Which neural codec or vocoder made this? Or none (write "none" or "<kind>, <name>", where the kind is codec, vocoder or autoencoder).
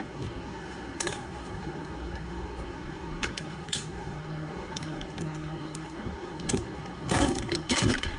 codec, SNAC